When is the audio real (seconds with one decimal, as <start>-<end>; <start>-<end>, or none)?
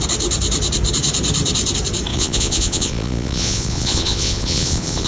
0.0-2.1